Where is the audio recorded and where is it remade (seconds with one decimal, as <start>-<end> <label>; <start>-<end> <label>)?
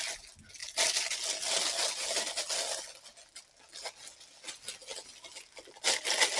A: 0.0-6.4 recorded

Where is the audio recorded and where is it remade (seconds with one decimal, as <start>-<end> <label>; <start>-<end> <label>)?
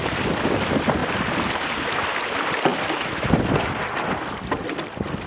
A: 0.0-5.3 recorded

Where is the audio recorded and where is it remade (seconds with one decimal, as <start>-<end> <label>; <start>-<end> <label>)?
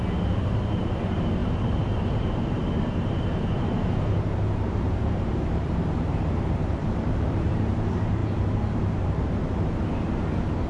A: 0.0-9.9 remade; 9.9-10.7 recorded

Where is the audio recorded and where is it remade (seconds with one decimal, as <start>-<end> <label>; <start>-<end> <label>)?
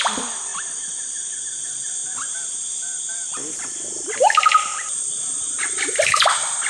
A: 0.0-6.7 recorded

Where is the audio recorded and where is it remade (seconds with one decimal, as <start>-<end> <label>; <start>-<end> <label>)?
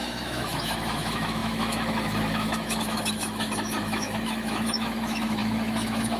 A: 0.0-6.2 remade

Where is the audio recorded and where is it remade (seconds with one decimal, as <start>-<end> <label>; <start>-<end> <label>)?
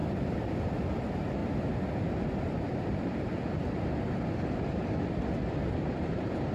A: 0.0-0.5 recorded; 0.5-1.4 remade; 1.4-2.4 recorded; 2.4-3.3 remade; 3.3-5.9 recorded; 5.9-6.5 remade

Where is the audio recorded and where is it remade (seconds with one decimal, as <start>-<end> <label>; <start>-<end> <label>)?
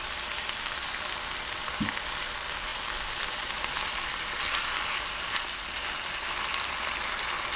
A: 0.0-7.6 recorded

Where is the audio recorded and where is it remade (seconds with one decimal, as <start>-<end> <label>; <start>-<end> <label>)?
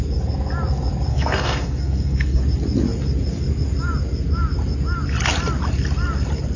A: 0.0-1.1 recorded; 1.1-2.4 remade; 2.4-6.6 recorded